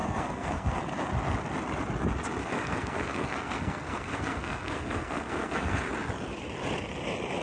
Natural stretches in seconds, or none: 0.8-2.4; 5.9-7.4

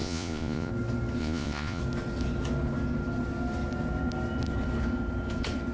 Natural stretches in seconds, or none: 0.7-1.2; 1.8-5.7

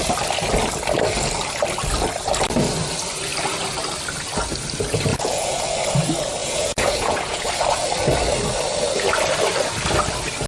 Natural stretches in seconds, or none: 0.0-5.1; 5.6-6.4; 7.5-10.5

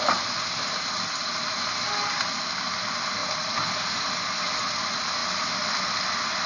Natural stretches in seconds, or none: 0.0-6.5